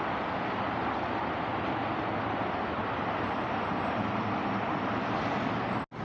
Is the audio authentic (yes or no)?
yes